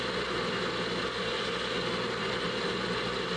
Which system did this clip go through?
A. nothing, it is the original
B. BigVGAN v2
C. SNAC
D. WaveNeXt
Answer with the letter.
A